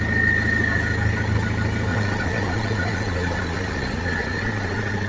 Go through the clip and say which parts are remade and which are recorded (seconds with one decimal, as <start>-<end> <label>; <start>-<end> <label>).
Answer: 0.0-1.9 recorded; 1.9-5.1 remade